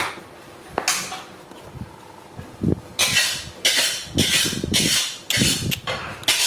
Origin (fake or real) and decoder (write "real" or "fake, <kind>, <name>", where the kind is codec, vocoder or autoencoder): real